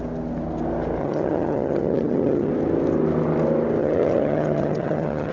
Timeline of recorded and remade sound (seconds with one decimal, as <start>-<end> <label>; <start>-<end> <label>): 0.0-1.0 recorded; 1.0-2.5 remade; 2.5-3.8 recorded; 3.8-5.3 remade

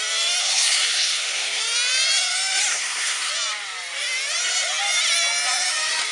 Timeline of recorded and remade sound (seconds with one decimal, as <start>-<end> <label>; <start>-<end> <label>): 0.0-0.4 recorded; 0.4-1.6 remade; 1.6-2.7 recorded; 2.7-3.3 remade; 3.3-6.1 recorded

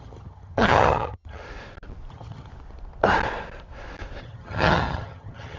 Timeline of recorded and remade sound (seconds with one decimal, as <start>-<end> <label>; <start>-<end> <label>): 0.0-1.4 remade; 1.4-2.1 recorded; 2.1-2.5 remade; 2.5-4.2 recorded; 4.2-5.6 remade